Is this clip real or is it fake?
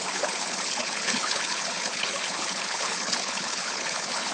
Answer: fake